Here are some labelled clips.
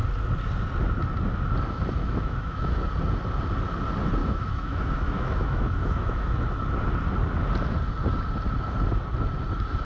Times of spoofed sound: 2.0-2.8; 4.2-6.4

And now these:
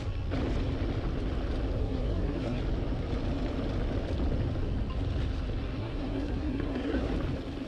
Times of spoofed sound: 1.8-2.6; 5.8-7.1

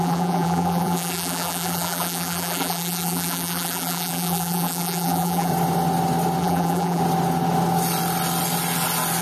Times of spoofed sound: 0.0-5.5; 6.4-7.0

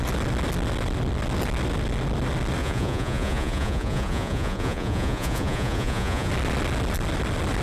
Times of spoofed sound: 2.6-6.3

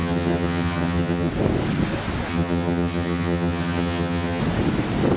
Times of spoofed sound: 0.0-1.3; 2.3-4.4